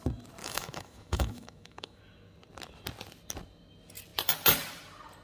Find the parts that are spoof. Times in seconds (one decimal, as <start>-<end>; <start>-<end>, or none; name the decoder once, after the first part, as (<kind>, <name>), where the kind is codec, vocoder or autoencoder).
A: 0.4-2.0 (autoencoder, DAC-VAE)